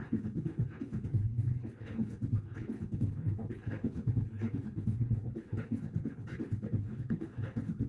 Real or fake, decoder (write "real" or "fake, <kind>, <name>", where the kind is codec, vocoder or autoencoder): fake, codec, HILCodec